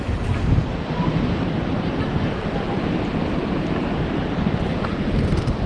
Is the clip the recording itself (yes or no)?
no